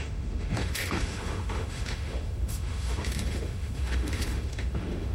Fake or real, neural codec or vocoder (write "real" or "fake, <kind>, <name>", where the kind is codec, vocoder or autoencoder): fake, autoencoder, DAC-VAE